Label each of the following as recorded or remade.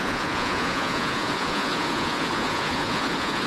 remade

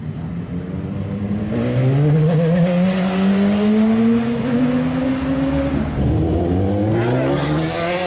recorded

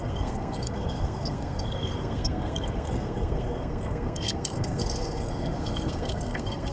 remade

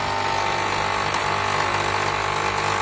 recorded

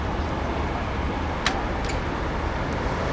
recorded